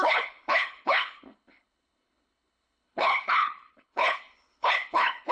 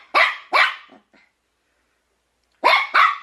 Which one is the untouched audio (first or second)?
second